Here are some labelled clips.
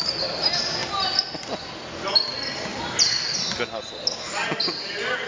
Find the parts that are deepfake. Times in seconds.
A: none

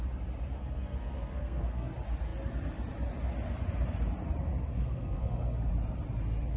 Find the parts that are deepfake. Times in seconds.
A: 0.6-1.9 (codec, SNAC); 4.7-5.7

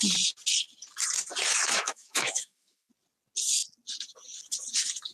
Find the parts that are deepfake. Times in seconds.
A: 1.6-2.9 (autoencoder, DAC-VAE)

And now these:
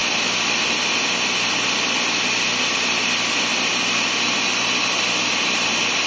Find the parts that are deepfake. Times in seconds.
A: none